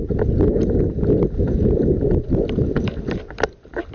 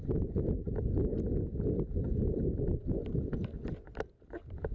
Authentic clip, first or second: second